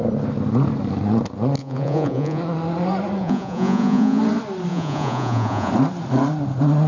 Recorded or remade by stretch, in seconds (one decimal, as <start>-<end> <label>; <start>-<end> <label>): 0.0-1.6 recorded; 1.6-2.4 remade; 2.4-3.2 recorded; 3.2-4.2 remade; 4.2-4.7 recorded; 4.7-5.7 remade; 5.7-6.9 recorded